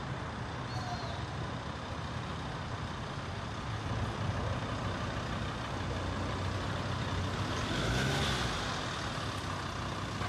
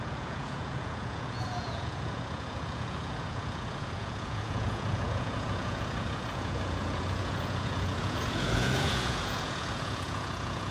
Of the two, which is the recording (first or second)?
first